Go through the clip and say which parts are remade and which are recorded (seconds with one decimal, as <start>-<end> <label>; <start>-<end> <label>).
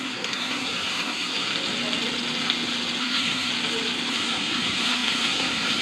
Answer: 0.0-1.5 remade; 1.5-3.0 recorded; 3.0-3.5 remade; 3.5-4.1 recorded; 4.1-5.8 remade